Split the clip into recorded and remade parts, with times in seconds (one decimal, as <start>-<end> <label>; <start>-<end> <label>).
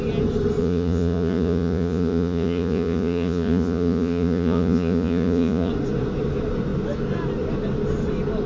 0.0-0.6 recorded; 0.6-5.7 remade; 5.7-8.5 recorded